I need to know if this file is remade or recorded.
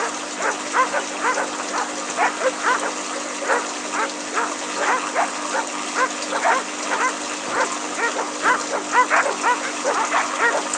recorded